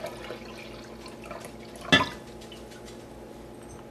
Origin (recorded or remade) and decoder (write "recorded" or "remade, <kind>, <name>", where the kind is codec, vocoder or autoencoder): recorded